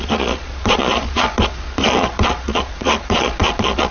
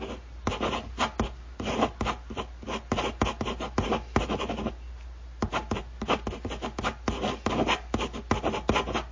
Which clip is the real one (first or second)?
second